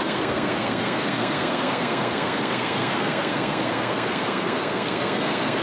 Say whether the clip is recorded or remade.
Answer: remade